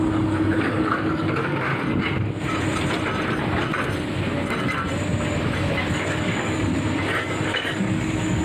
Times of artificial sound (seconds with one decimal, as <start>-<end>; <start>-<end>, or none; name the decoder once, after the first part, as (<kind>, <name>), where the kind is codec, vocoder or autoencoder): 0.0-1.7 (codec, DAC); 5.9-6.7; 7.2-8.4